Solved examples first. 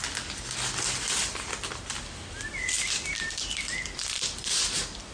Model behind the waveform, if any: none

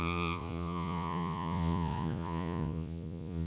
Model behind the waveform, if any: vocoder, Vocos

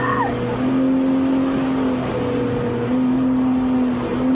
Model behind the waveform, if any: none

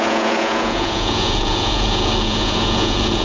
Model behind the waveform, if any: vocoder, Vocos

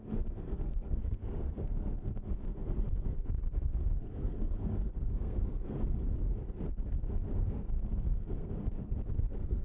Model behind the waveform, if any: codec, SNAC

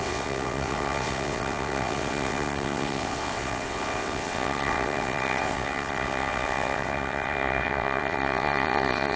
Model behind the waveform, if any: vocoder, WaveNeXt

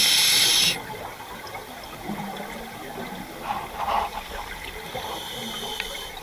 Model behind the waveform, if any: none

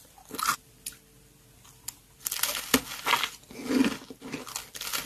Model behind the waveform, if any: none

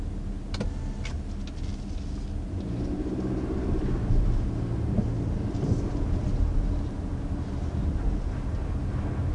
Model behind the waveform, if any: none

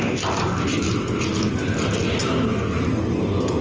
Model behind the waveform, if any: none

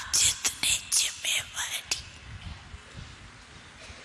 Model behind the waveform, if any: none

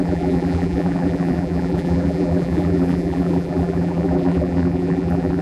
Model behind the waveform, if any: vocoder, BigVGAN v2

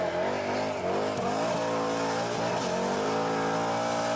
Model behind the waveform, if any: none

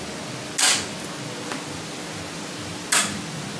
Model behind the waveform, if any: none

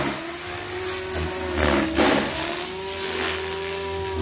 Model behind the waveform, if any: none